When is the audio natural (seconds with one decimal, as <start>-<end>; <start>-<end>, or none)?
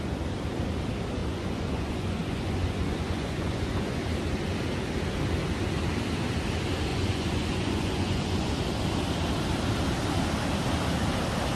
0.0-1.2; 4.0-6.9; 8.5-11.6